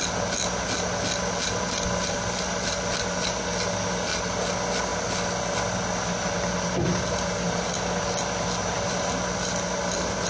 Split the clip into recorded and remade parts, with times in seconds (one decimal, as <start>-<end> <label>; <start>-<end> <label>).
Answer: 0.0-10.3 recorded